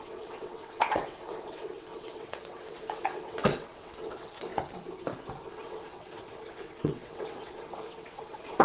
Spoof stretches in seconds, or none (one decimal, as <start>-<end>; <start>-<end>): 0.0-4.5; 5.5-8.6